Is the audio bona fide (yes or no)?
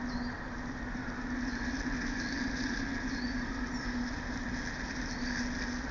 yes